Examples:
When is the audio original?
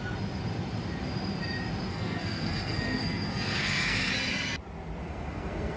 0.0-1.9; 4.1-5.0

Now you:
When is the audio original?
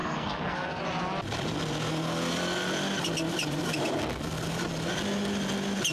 0.8-5.9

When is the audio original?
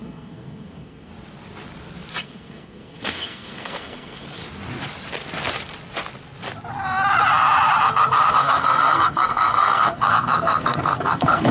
1.1-2.2; 4.4-8.3